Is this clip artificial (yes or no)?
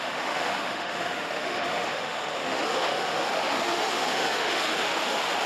yes